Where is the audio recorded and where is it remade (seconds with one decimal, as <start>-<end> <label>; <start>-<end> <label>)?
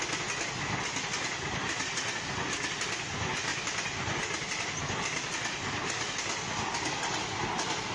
0.0-7.9 recorded